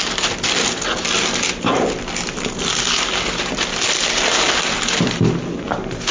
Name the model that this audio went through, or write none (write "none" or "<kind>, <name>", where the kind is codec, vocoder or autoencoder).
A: none